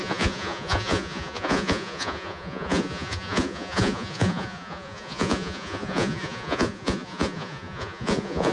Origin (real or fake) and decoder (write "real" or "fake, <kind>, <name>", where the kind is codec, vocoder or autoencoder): fake, vocoder, Vocos